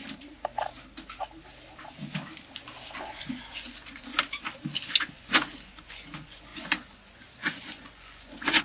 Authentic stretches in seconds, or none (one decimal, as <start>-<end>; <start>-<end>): 0.0-3.0; 4.1-5.1